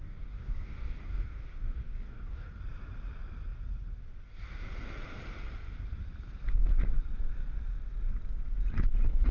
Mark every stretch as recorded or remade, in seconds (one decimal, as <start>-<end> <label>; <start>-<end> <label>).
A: 0.0-2.6 remade; 2.6-9.3 recorded